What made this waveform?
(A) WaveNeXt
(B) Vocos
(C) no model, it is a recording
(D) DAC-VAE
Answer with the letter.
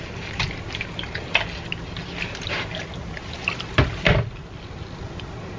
C